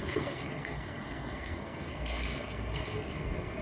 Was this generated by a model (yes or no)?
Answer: yes